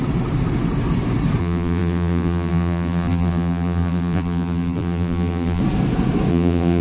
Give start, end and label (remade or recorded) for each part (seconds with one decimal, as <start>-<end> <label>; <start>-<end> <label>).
0.0-1.4 recorded; 1.4-5.6 remade; 5.6-6.3 recorded; 6.3-6.8 remade